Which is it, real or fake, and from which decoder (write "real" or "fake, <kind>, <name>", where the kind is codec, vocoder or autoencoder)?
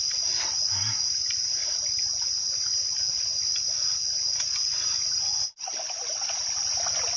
real